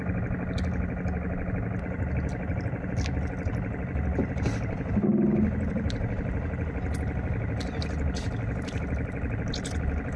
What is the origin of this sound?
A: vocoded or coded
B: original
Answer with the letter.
B